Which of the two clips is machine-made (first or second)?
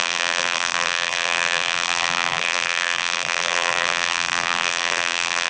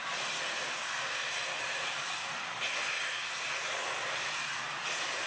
first